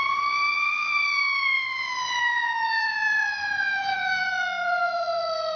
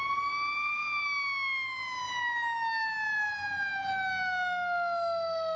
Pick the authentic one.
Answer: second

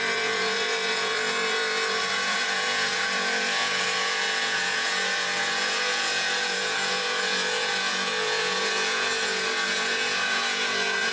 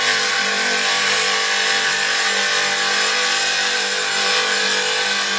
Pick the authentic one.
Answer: second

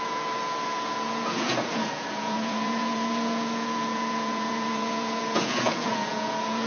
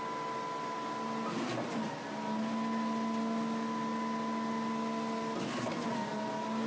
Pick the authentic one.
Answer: second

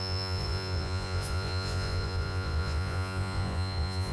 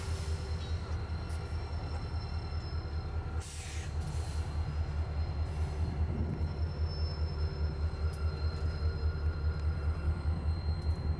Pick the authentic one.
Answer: second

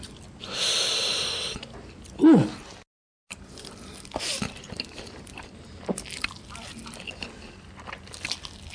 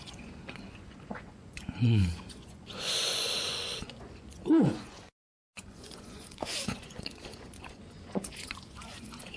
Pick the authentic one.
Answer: first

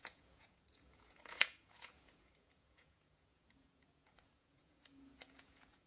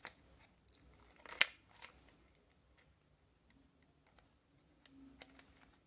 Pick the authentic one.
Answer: second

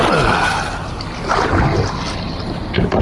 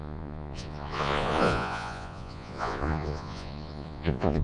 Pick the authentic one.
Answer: first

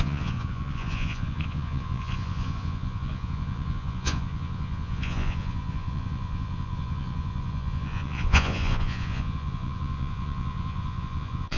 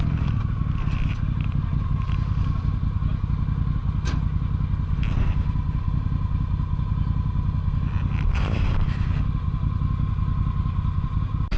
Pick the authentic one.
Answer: second